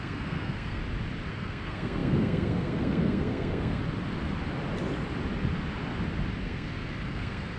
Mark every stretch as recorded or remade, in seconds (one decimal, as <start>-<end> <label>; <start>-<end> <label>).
0.0-0.8 remade; 0.8-1.3 recorded; 1.3-3.8 remade; 3.8-6.4 recorded; 6.4-7.6 remade